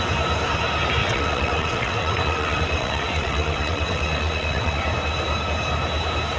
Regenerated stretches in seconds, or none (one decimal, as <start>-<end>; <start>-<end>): 1.0-4.8